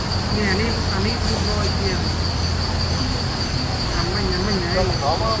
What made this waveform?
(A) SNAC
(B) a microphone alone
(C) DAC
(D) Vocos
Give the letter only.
B